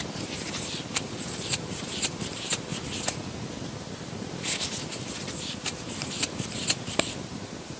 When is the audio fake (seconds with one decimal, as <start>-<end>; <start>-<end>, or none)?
0.0-2.7; 6.1-7.8